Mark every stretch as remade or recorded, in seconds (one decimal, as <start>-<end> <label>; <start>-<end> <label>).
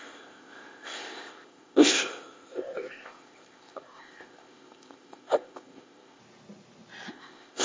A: 0.0-6.2 remade; 6.2-7.1 recorded; 7.1-7.6 remade